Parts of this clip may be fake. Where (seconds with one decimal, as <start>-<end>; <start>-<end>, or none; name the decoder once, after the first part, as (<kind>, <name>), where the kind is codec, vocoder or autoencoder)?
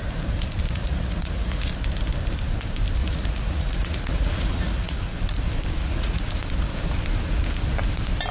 0.8-1.7 (vocoder, Vocos); 3.0-5.2; 5.8-6.3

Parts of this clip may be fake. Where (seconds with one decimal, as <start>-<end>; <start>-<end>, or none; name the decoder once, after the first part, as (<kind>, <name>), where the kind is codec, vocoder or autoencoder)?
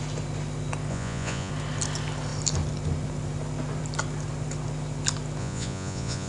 0.9-1.5 (vocoder, Vocos); 5.4-6.3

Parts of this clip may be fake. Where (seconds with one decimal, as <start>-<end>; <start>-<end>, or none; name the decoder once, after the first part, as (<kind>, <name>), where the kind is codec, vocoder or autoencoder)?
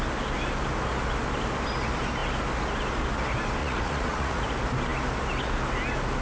3.6-4.4 (vocoder, Vocos)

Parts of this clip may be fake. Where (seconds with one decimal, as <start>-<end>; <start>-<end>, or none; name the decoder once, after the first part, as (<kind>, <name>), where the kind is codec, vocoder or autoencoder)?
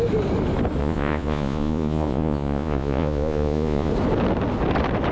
0.8-3.9 (vocoder, Vocos)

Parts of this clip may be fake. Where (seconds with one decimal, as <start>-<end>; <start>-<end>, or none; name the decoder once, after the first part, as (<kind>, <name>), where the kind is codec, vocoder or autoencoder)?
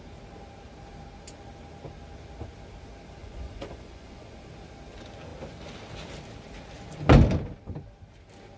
3.2-4.5 (vocoder, Vocos)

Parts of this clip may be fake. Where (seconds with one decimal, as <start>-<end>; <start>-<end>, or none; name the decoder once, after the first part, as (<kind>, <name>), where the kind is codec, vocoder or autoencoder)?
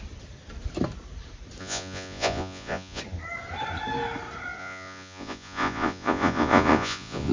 1.6-3.0 (vocoder, Vocos); 4.6-7.3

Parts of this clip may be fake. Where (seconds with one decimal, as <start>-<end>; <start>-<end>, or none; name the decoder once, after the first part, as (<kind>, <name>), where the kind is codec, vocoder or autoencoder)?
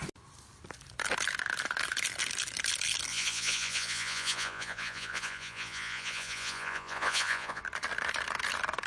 3.1-7.6 (vocoder, Vocos)